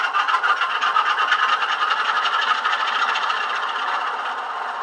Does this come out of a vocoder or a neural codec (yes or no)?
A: no